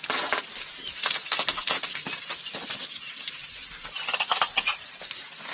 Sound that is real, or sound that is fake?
real